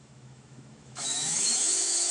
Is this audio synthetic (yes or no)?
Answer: yes